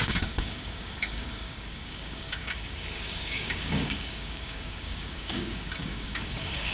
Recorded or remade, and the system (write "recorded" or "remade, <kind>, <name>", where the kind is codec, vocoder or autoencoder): remade, codec, DAC